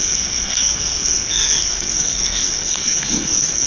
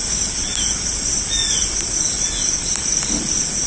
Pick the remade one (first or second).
first